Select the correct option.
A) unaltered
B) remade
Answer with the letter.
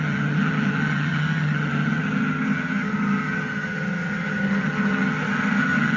B